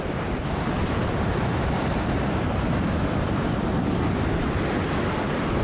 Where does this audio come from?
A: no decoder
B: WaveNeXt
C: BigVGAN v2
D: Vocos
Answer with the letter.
A